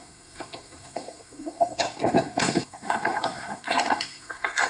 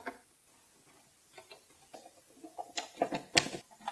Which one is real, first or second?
second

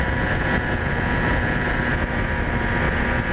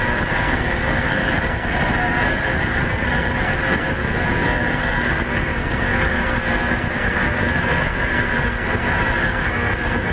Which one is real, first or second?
first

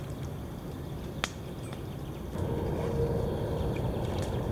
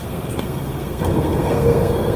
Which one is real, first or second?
first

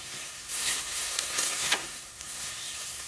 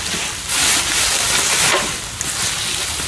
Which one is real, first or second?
second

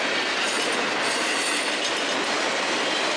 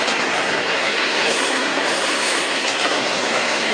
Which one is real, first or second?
first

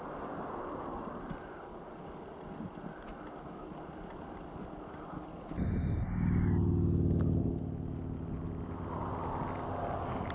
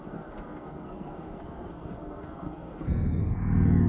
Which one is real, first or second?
first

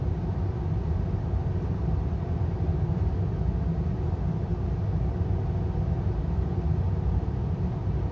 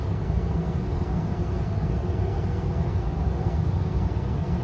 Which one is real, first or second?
first